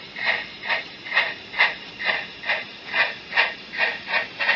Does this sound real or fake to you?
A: fake